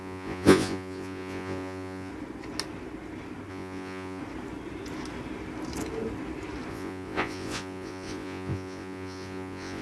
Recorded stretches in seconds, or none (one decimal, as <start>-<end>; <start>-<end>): 2.1-3.5; 4.2-6.7